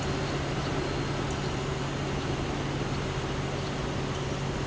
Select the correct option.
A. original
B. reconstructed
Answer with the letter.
A